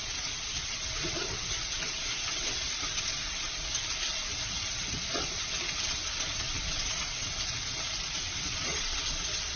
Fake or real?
fake